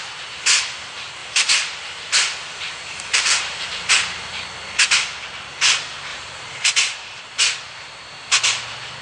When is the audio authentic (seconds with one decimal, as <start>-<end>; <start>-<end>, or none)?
0.0-1.2; 3.9-6.1; 7.2-9.0